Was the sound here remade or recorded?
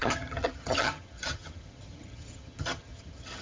remade